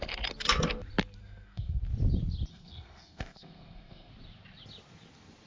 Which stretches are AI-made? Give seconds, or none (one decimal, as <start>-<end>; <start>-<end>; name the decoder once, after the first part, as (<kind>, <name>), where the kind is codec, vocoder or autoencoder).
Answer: 1.2-1.8 (codec, SNAC); 2.5-4.1